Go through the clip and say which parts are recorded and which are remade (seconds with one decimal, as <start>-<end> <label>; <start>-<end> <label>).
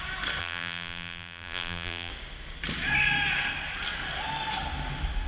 0.0-0.4 recorded; 0.4-2.1 remade; 2.1-5.3 recorded